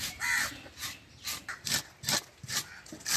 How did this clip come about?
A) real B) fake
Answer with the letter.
A